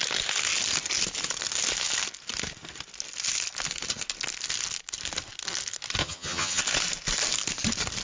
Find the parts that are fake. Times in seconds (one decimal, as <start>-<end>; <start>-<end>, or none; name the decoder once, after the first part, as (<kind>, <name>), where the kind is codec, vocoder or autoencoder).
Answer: 6.0-6.6 (vocoder, HiFi-GAN)